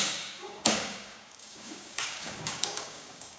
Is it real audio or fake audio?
fake